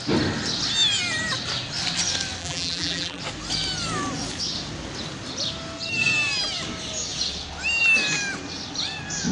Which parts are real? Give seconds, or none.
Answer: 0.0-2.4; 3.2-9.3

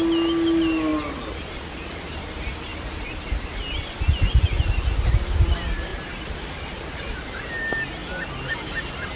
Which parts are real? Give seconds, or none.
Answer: 0.0-2.7; 3.8-5.9; 7.5-9.2